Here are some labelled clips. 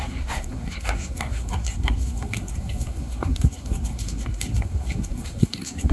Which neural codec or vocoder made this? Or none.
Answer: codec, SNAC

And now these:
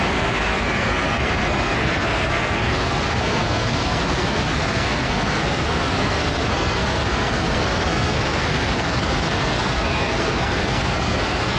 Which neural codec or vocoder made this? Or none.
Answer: codec, SNAC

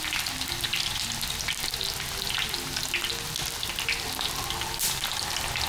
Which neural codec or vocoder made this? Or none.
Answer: none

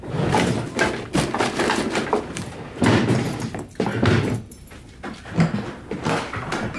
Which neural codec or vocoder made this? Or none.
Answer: none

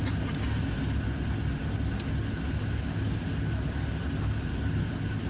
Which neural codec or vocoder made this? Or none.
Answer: none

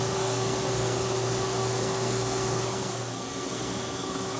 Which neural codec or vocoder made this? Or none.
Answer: codec, SNAC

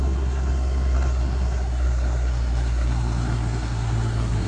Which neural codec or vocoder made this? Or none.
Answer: codec, SNAC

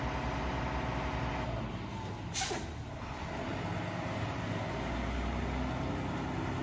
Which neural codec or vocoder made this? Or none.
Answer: none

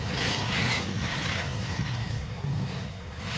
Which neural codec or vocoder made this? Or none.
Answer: codec, SNAC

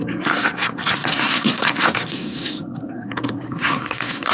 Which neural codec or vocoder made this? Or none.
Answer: codec, SNAC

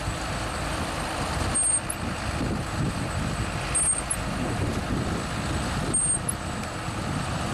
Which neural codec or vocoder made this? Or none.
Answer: none